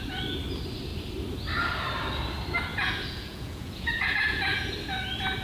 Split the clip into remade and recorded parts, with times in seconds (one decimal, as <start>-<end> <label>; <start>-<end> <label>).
0.0-2.7 recorded; 2.7-4.7 remade; 4.7-5.4 recorded